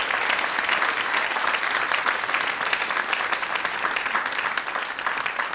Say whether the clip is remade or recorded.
recorded